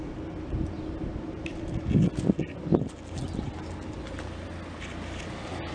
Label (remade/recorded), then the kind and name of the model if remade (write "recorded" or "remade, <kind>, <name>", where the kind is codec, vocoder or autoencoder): recorded